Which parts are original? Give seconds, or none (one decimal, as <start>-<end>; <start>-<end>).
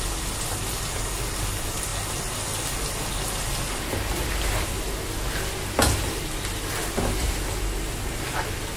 0.0-8.8